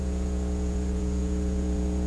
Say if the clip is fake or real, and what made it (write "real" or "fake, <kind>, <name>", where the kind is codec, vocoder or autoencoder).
fake, vocoder, Vocos